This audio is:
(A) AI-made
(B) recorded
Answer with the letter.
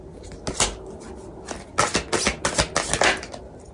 B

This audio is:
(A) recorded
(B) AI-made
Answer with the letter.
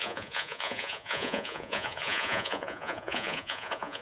B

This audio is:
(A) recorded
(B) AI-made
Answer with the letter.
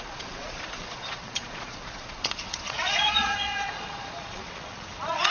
B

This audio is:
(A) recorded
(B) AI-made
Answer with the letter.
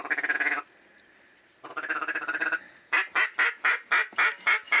A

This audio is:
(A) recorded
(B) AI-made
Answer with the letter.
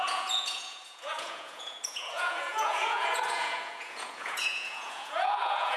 B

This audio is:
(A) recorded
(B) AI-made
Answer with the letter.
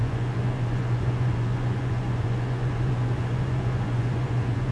B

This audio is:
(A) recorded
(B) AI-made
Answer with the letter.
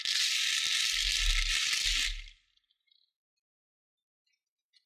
A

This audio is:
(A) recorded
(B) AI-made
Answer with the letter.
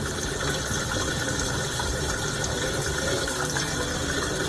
A